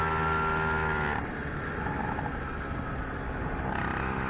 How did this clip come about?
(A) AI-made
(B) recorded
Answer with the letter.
B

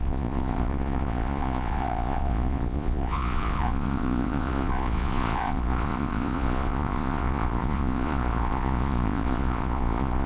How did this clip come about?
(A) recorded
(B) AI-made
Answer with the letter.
B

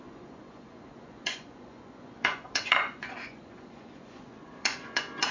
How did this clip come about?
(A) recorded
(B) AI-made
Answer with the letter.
B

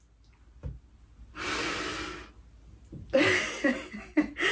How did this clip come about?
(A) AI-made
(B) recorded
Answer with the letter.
B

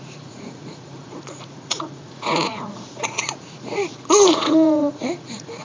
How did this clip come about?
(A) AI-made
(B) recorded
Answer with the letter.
A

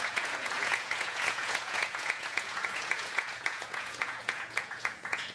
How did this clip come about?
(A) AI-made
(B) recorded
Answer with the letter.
A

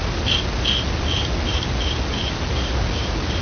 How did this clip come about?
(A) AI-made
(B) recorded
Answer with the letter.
B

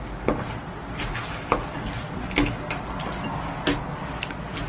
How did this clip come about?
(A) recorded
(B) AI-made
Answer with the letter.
A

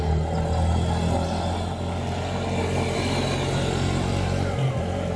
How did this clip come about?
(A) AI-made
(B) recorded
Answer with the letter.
B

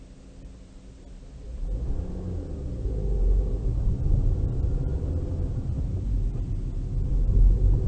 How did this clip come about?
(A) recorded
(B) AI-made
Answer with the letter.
A